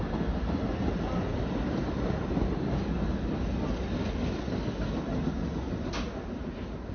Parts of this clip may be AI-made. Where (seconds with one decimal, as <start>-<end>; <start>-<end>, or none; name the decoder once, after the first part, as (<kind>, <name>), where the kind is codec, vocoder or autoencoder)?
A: none